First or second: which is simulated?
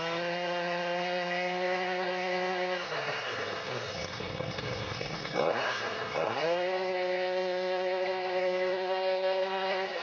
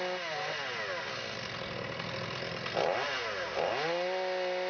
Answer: first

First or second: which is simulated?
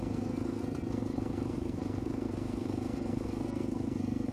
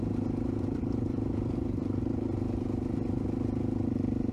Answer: first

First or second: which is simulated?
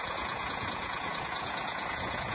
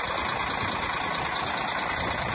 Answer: first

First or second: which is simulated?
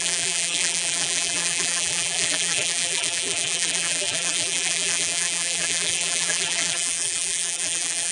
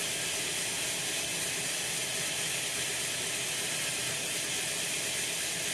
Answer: first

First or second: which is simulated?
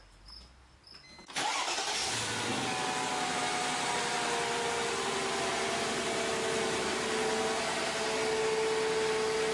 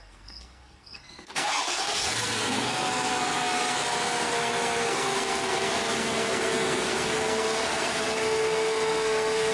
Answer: second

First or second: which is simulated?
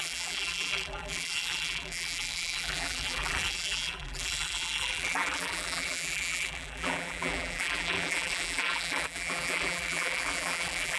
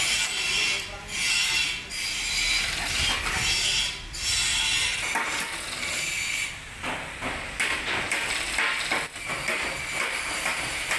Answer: first